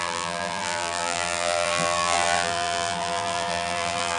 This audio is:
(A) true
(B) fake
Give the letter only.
B